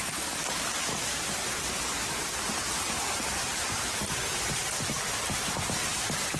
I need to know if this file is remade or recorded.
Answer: recorded